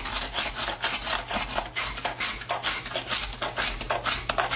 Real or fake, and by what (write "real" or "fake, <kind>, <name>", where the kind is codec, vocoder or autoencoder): real